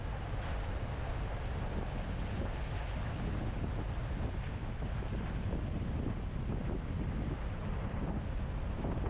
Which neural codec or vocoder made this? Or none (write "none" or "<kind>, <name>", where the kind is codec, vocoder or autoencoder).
none